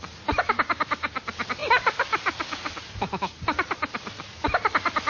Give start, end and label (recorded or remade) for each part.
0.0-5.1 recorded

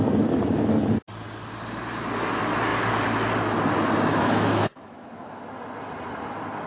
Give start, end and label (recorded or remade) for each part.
0.0-4.1 recorded; 4.1-5.4 remade; 5.4-6.7 recorded

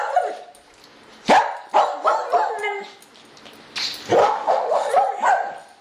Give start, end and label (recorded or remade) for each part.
0.0-4.2 recorded; 4.2-4.9 remade; 4.9-5.8 recorded

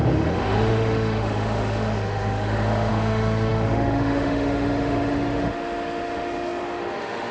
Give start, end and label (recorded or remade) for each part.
0.0-7.3 remade

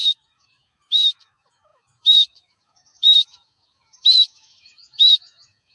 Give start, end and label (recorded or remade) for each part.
0.0-5.7 remade

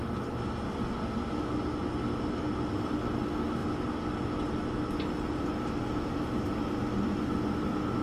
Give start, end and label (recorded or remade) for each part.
0.0-8.0 recorded